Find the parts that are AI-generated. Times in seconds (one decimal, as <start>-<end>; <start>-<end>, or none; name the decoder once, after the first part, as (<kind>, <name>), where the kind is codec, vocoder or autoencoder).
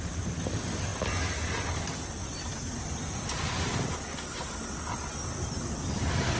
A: none